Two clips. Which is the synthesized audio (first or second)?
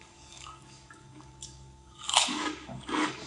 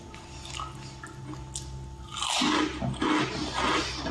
first